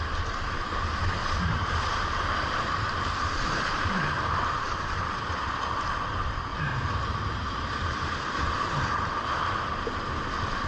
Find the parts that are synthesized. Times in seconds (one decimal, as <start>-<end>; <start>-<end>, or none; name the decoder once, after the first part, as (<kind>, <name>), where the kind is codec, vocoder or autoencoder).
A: 1.2-5.2 (vocoder, BigVGAN v2); 6.5-8.4